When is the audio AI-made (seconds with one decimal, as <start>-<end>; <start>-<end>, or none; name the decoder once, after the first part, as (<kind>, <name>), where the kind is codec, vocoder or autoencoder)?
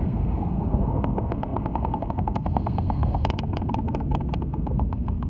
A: 0.0-5.3 (codec, SNAC)